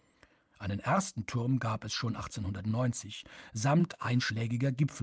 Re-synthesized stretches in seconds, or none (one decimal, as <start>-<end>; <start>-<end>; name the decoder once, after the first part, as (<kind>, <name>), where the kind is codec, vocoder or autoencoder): 3.8-4.3 (autoencoder, DAC-VAE)